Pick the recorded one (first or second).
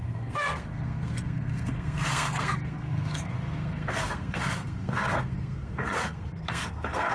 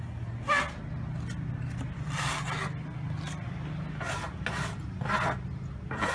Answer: second